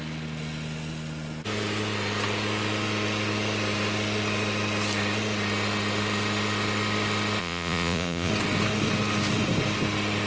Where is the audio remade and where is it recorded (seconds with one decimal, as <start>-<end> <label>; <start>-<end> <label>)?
0.0-7.4 recorded; 7.4-8.3 remade; 8.3-10.3 recorded